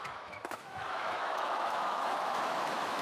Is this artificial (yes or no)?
yes